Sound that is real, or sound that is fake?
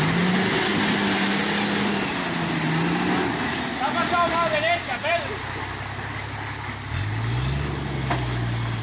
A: real